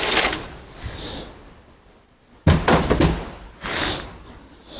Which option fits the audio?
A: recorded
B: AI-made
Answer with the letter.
A